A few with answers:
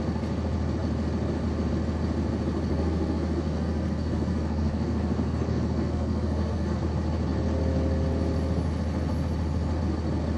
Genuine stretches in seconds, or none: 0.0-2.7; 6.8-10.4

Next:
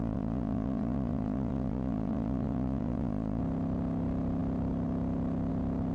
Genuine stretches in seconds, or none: 3.4-5.9

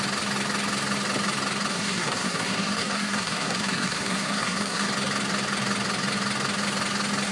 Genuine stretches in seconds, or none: 0.0-1.7; 4.9-7.3

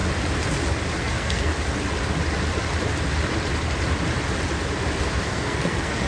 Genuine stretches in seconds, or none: 0.0-1.0; 1.5-5.2

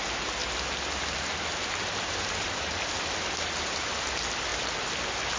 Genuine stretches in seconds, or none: 0.0-5.4

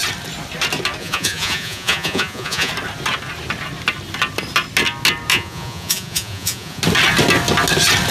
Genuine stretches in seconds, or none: 0.0-1.0; 2.7-5.3; 6.8-8.1